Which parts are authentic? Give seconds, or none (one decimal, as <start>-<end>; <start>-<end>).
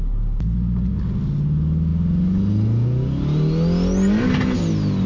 0.0-5.1